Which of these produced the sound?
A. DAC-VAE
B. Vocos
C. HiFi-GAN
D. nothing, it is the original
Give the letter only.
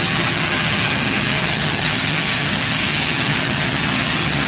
C